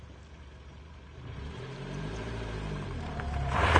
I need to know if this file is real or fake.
fake